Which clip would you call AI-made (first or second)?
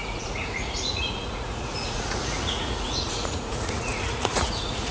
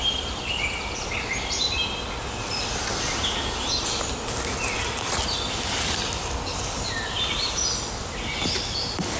first